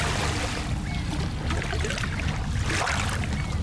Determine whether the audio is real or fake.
real